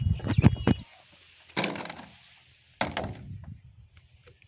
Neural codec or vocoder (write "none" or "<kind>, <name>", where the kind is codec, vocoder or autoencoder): none